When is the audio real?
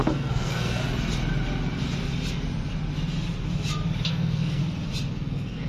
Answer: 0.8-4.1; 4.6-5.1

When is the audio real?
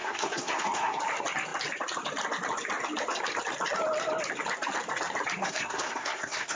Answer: 1.0-5.4